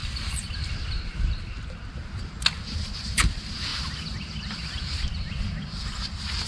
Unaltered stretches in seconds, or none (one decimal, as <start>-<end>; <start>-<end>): 1.2-6.5